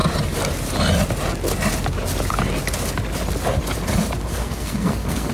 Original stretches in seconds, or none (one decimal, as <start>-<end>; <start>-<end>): 0.0-4.3